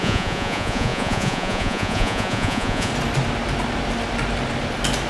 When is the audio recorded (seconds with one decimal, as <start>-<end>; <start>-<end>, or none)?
2.9-5.1